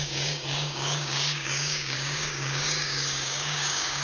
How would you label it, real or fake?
fake